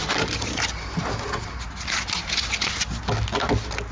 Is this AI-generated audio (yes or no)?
no